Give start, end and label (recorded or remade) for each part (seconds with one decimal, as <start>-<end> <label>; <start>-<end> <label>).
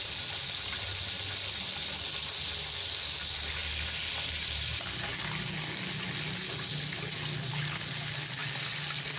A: 0.0-9.2 recorded